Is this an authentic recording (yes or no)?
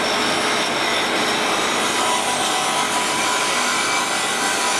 yes